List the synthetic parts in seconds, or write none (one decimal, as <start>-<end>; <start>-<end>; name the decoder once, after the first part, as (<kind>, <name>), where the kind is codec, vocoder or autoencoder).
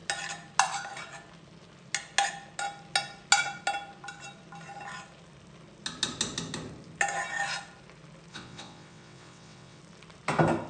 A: 8.3-9.8 (vocoder, WaveNeXt)